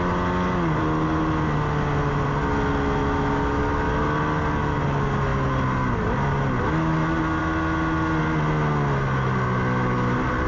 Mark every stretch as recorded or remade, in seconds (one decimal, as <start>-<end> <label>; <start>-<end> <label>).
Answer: 0.0-3.0 recorded; 3.0-3.6 remade; 3.6-10.5 recorded